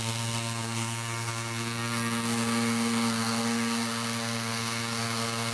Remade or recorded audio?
remade